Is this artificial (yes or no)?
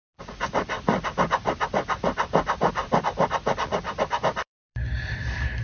yes